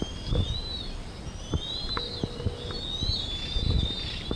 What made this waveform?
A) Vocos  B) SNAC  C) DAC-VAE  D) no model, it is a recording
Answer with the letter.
D